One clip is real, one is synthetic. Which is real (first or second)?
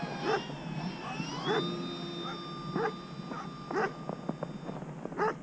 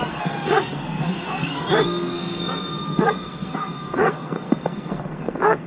first